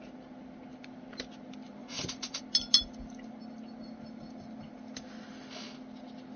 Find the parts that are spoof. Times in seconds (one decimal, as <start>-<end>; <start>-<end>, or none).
1.8-2.4